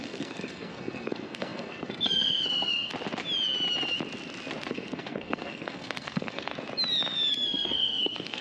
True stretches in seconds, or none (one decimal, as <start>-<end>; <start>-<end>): 2.9-4.7; 6.5-7.3